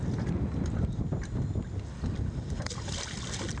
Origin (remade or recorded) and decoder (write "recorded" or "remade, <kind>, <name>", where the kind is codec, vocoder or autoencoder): recorded